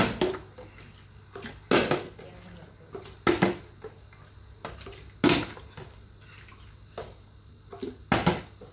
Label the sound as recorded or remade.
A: recorded